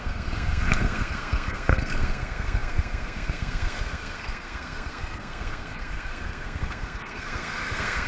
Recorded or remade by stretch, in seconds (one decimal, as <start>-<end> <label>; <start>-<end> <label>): 0.0-8.1 remade